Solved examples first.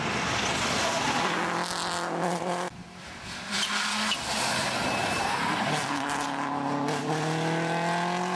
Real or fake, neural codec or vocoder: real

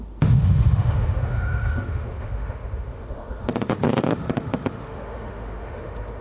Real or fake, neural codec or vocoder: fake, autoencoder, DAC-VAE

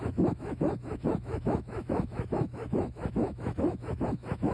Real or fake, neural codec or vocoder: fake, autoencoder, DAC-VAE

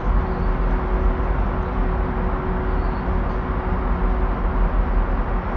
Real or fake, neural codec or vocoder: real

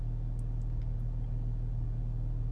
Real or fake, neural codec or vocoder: real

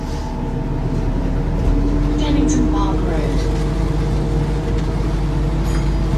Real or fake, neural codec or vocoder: real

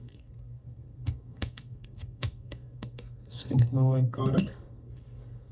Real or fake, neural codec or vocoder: fake, codec, SNAC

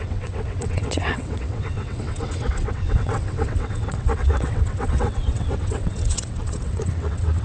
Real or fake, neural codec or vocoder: fake, vocoder, WaveNeXt